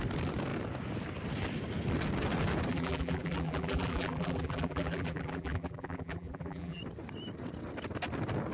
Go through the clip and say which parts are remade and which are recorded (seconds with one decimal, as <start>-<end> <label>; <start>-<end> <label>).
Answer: 0.0-2.7 recorded; 2.7-6.8 remade; 6.8-8.5 recorded